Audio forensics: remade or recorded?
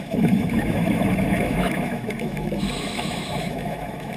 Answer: remade